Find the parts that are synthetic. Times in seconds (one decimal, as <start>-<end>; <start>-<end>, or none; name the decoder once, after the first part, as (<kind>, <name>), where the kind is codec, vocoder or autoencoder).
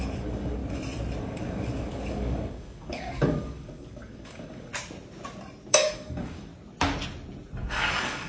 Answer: 0.0-0.6 (codec, DAC); 1.2-4.7; 5.7-6.5; 7.7-8.3